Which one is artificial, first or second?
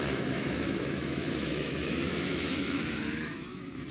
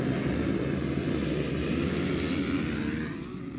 first